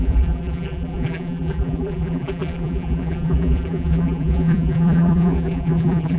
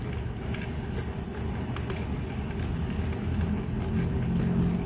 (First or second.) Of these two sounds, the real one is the second